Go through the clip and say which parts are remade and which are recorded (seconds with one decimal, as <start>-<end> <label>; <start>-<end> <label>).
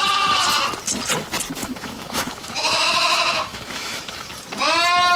0.0-1.6 recorded; 1.6-4.3 remade; 4.3-5.2 recorded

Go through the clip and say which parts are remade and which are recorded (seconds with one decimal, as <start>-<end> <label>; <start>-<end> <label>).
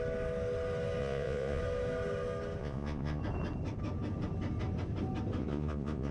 0.0-1.0 recorded; 1.0-1.6 remade; 1.6-2.6 recorded; 2.6-3.2 remade; 3.2-5.4 recorded; 5.4-6.1 remade